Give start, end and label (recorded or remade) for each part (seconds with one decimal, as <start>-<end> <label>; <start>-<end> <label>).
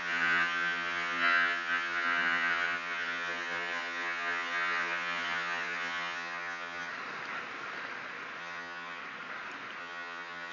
0.0-6.9 remade; 6.9-8.4 recorded; 8.4-9.0 remade; 9.0-9.8 recorded; 9.8-10.5 remade